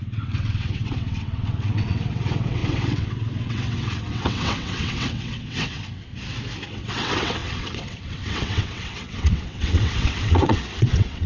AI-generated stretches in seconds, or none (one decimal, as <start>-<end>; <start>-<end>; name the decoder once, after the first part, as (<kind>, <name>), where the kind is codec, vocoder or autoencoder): 0.0-6.1 (vocoder, WaveNeXt); 6.7-11.3